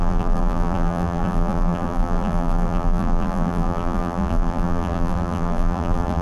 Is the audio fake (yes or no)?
yes